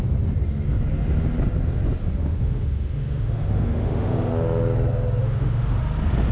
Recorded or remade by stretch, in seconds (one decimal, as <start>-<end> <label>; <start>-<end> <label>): 0.0-2.0 recorded; 2.0-4.3 remade; 4.3-5.2 recorded; 5.2-5.8 remade; 5.8-6.3 recorded